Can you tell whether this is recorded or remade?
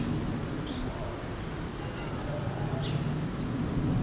recorded